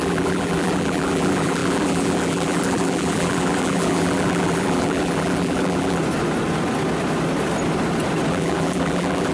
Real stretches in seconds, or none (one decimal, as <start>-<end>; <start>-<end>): 6.0-8.3

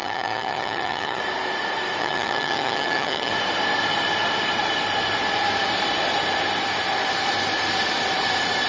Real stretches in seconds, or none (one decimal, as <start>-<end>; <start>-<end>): 1.2-2.0; 3.3-8.7

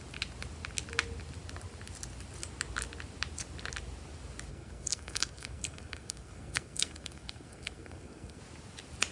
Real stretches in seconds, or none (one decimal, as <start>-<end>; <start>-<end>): 0.0-4.5; 8.4-9.1

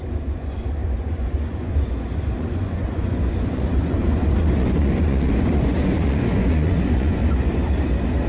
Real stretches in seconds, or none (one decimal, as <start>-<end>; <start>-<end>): 7.2-8.3

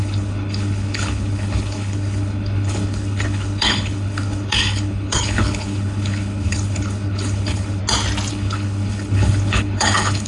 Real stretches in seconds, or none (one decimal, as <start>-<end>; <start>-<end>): 7.8-8.3

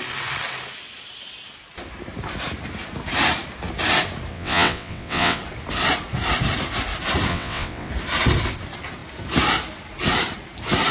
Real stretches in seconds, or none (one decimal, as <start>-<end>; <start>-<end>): 0.0-4.3; 5.4-7.3; 7.9-10.9

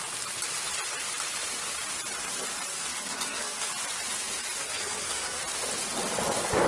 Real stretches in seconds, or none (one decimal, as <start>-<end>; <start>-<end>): 0.0-2.7; 3.7-4.6; 5.4-6.7